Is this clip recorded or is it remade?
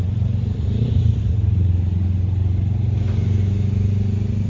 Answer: recorded